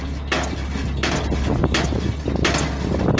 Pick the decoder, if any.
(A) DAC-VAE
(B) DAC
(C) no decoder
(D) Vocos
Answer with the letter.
C